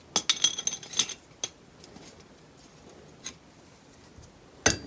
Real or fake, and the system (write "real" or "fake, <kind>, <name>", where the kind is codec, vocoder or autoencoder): real